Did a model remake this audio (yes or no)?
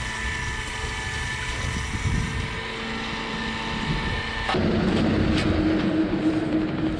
no